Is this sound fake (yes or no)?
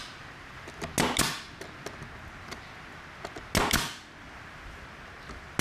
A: no